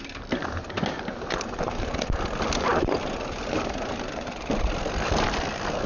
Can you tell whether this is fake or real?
real